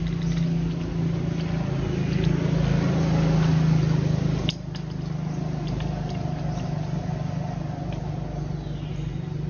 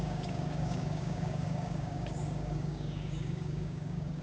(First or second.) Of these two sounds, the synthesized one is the second